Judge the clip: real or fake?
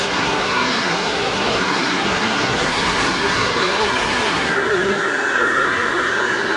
fake